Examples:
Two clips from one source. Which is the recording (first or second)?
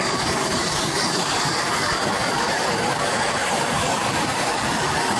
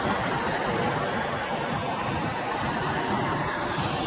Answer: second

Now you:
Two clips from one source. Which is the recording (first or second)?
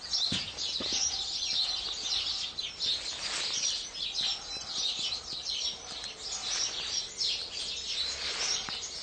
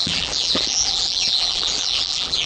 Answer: first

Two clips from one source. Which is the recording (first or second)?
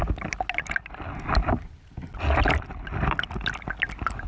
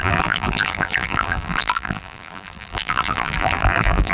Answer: first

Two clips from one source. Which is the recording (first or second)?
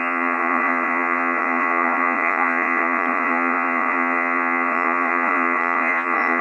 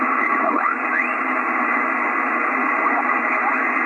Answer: second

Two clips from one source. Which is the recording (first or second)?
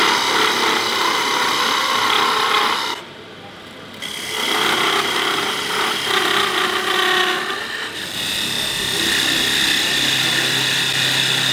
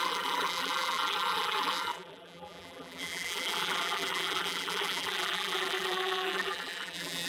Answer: first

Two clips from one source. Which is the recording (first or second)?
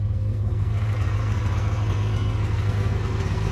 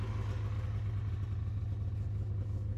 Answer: second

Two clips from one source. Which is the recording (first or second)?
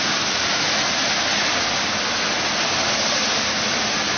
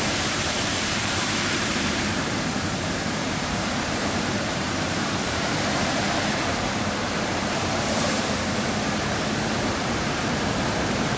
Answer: first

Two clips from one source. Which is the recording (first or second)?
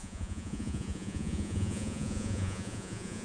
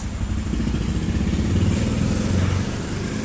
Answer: second